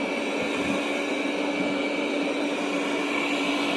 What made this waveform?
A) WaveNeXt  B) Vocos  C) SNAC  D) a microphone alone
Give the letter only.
D